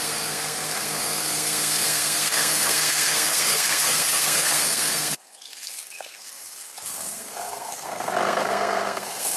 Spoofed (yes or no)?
yes